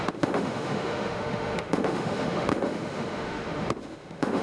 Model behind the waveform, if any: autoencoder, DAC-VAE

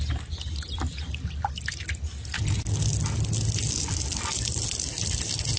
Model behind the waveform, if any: none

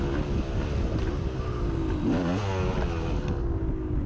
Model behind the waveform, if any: none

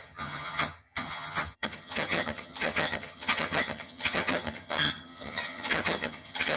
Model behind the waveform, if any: vocoder, HiFi-GAN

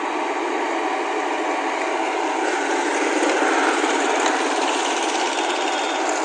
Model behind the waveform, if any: none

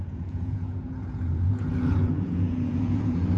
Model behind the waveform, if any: vocoder, Vocos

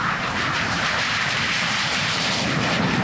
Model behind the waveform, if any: vocoder, BigVGAN v2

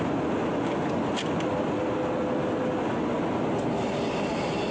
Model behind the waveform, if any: none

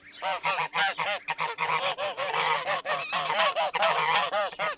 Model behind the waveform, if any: vocoder, BigVGAN v2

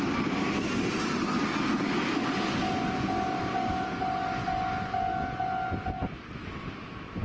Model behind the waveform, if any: none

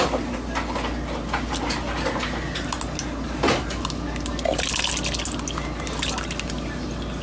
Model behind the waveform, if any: none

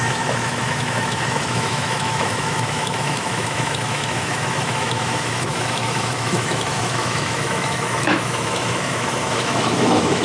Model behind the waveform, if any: autoencoder, DAC-VAE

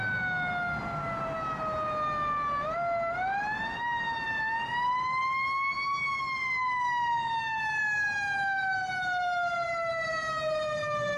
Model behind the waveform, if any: none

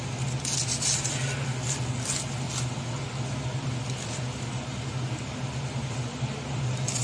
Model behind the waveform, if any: none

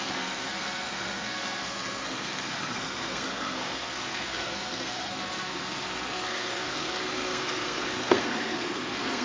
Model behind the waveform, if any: codec, SNAC